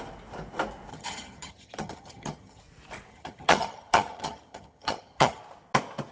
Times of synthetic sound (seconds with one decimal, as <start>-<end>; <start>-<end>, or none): 0.9-2.6; 3.1-5.4